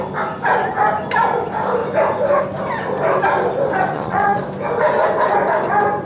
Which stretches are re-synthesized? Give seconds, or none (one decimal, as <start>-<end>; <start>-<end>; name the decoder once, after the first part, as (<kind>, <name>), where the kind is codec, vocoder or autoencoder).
3.9-4.4 (vocoder, Vocos)